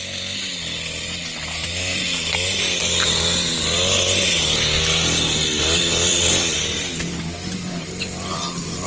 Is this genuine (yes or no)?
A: yes